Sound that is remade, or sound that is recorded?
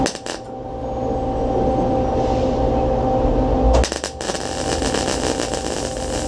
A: recorded